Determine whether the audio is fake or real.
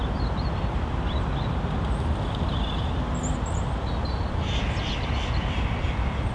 real